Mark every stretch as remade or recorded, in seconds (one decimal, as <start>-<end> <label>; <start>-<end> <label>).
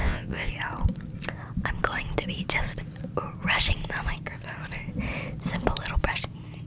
0.0-0.5 remade; 0.5-6.7 recorded